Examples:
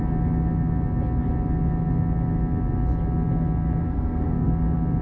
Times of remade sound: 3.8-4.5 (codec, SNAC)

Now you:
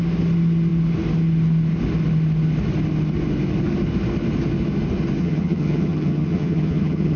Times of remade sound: 5.2-7.2 (vocoder, HiFi-GAN)